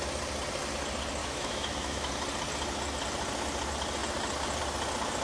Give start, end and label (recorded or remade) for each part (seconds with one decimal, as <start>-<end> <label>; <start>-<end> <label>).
0.0-1.2 recorded; 1.2-2.1 remade; 2.1-5.2 recorded